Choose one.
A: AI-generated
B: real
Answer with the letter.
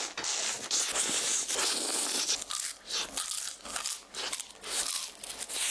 B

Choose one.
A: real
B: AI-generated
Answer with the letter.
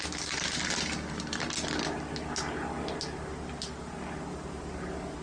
A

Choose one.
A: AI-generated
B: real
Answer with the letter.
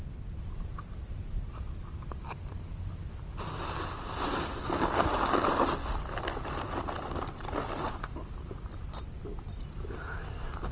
B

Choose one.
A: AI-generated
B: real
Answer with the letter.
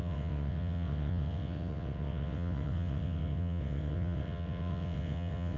A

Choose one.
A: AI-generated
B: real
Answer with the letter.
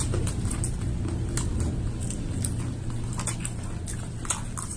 B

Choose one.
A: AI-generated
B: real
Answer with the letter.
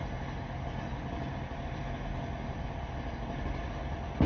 B